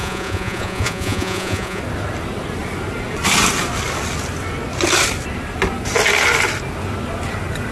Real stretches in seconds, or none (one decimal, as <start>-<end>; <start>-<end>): 1.8-7.7